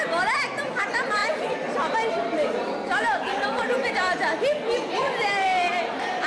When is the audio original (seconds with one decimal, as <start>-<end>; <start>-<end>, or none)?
0.0-6.3